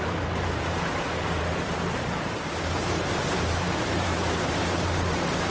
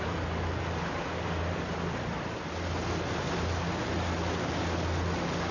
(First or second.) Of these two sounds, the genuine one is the second